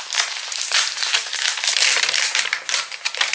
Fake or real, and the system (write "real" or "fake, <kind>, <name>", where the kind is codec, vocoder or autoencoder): fake, vocoder, BigVGAN v2